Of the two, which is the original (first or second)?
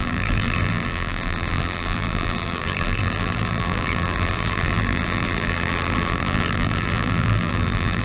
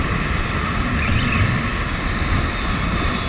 second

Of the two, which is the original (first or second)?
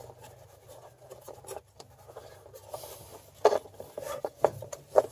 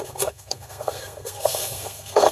first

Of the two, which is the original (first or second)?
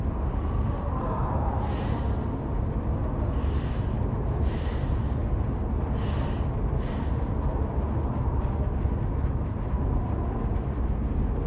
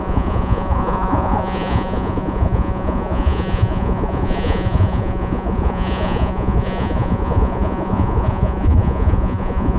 first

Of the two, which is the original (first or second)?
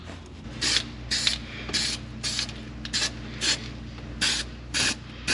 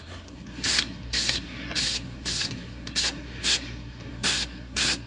first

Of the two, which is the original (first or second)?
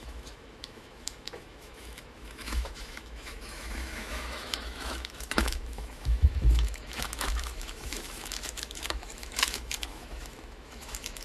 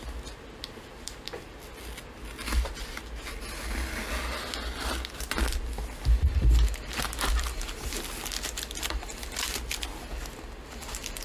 second